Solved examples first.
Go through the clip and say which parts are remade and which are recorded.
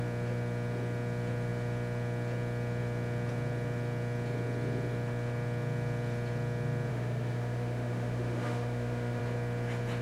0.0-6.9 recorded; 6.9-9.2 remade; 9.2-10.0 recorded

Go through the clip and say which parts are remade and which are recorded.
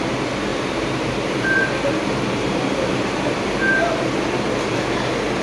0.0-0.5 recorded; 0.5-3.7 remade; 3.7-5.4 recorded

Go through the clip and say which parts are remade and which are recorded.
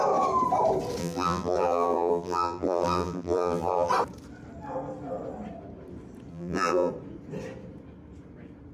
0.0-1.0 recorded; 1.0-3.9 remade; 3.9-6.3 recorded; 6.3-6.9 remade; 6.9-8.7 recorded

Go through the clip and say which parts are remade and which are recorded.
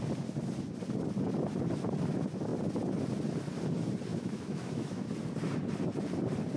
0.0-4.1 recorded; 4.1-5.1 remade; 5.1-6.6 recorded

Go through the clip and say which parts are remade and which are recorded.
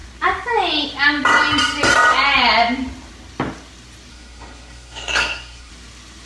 0.0-4.1 recorded; 4.1-5.7 remade; 5.7-6.3 recorded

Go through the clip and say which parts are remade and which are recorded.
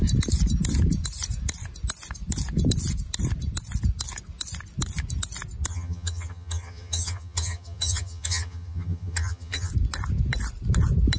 0.0-5.7 recorded; 5.7-9.7 remade; 9.7-11.2 recorded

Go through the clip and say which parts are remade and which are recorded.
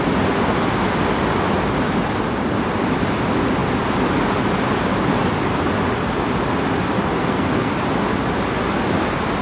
0.0-7.1 recorded; 7.1-7.7 remade; 7.7-9.4 recorded